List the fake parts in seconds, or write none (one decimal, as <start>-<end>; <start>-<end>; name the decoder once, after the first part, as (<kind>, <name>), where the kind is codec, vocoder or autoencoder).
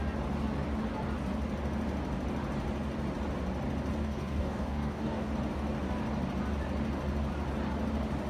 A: 4.0-5.3 (codec, DAC)